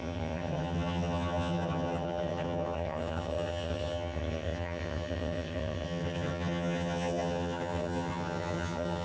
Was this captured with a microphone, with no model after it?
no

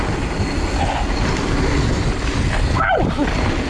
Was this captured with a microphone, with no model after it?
yes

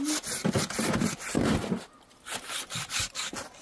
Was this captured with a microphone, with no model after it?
yes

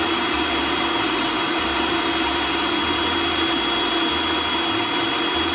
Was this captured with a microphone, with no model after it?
no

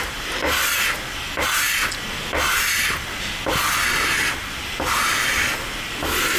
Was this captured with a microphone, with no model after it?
yes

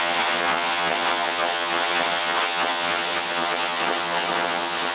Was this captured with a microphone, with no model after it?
no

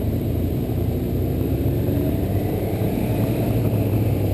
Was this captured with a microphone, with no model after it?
no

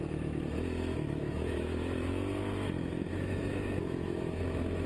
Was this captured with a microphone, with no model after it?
no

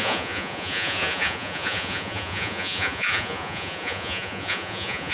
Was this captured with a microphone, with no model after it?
no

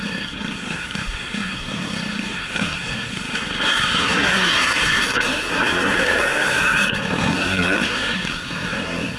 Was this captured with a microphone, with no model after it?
no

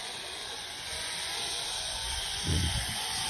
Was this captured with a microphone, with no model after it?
no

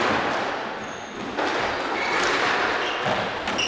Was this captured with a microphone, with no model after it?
yes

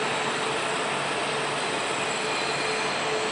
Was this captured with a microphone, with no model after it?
yes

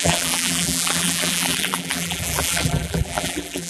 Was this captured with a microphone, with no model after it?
no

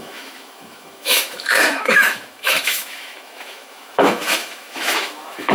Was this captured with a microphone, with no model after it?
no